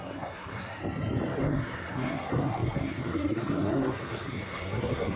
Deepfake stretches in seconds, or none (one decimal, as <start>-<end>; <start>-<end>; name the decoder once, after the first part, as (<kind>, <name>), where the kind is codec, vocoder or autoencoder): 0.0-0.8 (codec, SNAC); 1.4-5.2